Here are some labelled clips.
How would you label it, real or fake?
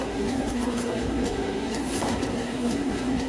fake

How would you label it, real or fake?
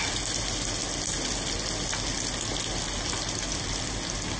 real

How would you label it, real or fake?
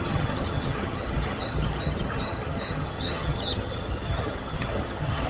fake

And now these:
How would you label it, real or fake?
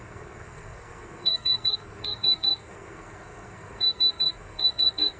fake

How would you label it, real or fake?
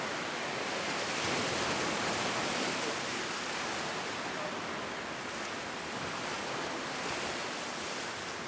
real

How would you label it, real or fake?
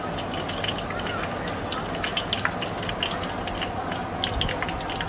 real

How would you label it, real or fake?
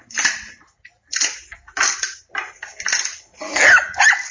real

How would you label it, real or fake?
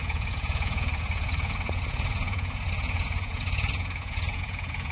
fake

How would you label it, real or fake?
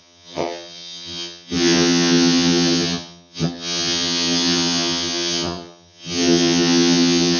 fake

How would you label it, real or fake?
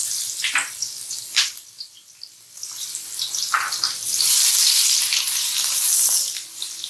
real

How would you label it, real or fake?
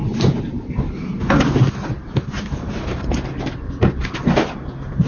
real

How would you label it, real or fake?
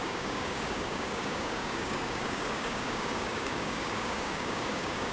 fake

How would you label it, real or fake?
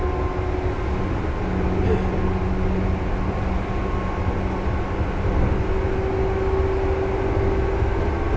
real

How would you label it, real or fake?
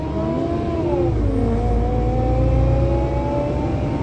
real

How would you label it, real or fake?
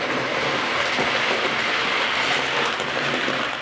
real